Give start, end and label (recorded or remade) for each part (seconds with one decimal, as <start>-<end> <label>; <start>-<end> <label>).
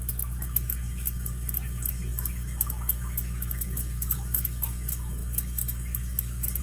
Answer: 0.0-6.6 remade